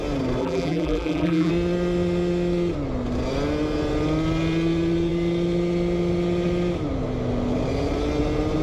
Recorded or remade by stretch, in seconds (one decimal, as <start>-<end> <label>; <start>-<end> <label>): 0.0-0.4 recorded; 0.4-1.5 remade; 1.5-8.6 recorded